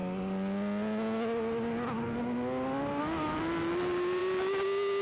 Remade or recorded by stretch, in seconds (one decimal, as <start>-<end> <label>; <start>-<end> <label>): 0.0-5.0 recorded